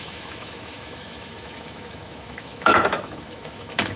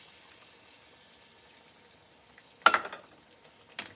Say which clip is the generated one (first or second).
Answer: first